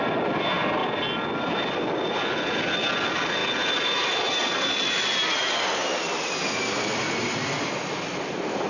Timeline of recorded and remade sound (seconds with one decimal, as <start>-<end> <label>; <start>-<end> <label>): 0.0-8.7 recorded